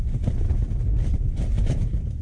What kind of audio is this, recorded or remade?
remade